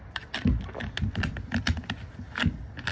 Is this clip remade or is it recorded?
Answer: recorded